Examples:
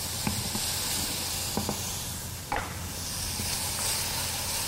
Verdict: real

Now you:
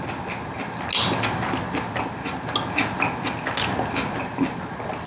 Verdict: real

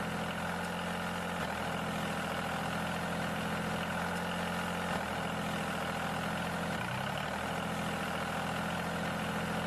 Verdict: real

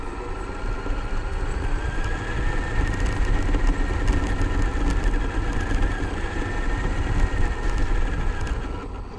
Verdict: real